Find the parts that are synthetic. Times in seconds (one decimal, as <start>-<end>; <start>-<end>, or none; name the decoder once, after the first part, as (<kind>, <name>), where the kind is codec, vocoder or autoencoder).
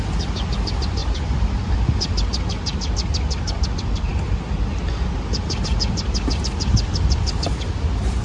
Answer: 1.0-1.8 (vocoder, BigVGAN v2)